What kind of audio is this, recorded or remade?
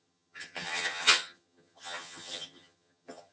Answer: remade